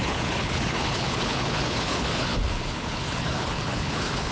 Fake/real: fake